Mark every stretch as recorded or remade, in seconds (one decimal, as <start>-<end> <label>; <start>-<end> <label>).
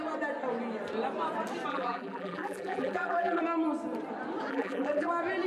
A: 0.0-1.7 recorded; 1.7-3.4 remade; 3.4-4.5 recorded; 4.5-5.1 remade; 5.1-5.5 recorded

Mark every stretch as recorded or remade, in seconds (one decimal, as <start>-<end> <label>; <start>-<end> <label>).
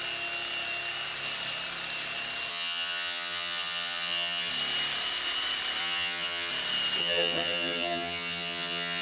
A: 0.0-2.5 recorded; 2.5-4.5 remade; 4.5-5.8 recorded; 5.8-6.5 remade; 6.5-7.0 recorded; 7.0-9.0 remade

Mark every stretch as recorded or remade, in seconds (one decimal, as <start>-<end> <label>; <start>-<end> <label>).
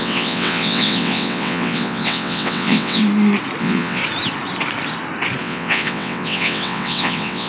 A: 0.0-3.0 remade; 3.0-3.6 recorded; 3.6-4.0 remade; 4.0-5.4 recorded; 5.4-7.5 remade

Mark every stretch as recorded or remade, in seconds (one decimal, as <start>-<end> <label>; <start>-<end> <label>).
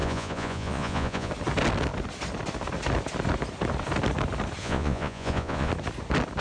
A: 0.0-1.3 remade; 1.3-4.6 recorded; 4.6-5.7 remade; 5.7-6.4 recorded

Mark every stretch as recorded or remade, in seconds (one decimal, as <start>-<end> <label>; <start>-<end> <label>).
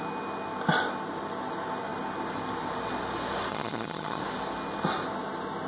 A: 0.0-3.5 recorded; 3.5-4.2 remade; 4.2-5.7 recorded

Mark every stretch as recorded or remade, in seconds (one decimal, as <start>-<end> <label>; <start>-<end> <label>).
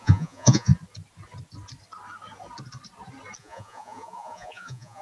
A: 0.0-0.7 remade; 0.7-3.4 recorded; 3.4-5.0 remade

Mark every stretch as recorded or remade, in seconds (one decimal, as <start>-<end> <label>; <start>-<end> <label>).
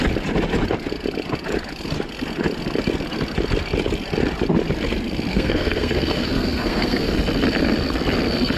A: 0.0-5.3 recorded; 5.3-7.1 remade; 7.1-8.6 recorded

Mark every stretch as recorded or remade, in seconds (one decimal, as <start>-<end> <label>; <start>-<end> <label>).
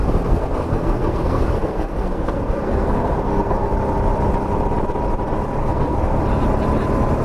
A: 0.0-3.7 remade; 3.7-5.6 recorded; 5.6-6.2 remade; 6.2-7.2 recorded